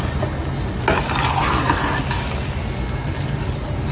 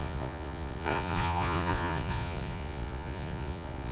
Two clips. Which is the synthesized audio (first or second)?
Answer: second